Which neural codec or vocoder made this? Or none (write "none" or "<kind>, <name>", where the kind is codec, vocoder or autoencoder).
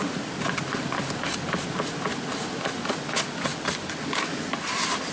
none